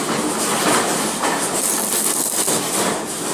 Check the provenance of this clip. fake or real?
real